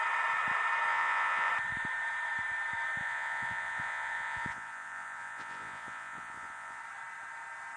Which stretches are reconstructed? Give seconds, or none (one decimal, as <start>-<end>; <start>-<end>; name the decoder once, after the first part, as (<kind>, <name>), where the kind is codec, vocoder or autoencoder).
0.9-1.5 (vocoder, Vocos); 3.0-6.8